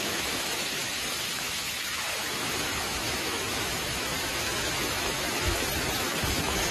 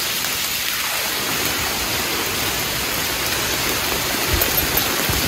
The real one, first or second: second